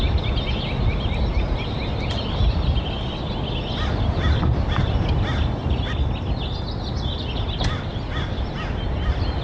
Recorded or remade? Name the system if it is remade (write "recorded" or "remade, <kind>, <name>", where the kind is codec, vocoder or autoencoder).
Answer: recorded